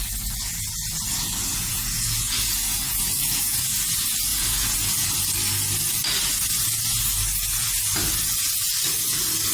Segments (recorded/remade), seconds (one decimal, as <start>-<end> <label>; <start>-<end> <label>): 0.0-1.5 recorded; 1.5-3.6 remade; 3.6-4.3 recorded; 4.3-5.2 remade; 5.2-9.5 recorded